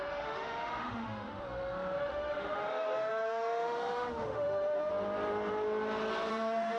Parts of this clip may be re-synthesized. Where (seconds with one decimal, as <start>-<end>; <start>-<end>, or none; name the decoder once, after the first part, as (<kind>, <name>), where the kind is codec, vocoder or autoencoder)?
0.0-4.9 (autoencoder, DAC-VAE); 6.3-6.8